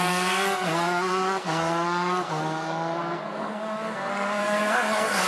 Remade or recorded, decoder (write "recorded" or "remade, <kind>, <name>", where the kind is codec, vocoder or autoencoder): remade, codec, SNAC